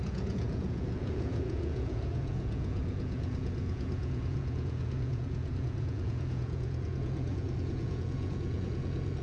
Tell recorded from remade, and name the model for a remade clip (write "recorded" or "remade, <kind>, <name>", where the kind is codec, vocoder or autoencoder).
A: remade, vocoder, Vocos